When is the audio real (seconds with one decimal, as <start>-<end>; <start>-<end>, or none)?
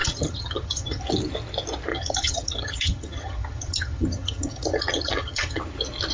1.0-1.9; 5.6-6.1